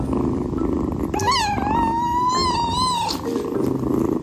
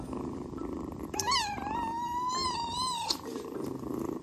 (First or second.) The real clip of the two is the first